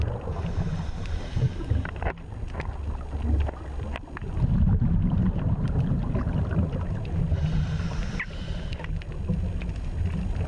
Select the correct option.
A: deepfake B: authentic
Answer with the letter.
B